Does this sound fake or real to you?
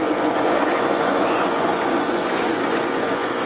fake